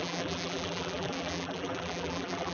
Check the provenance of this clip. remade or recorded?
remade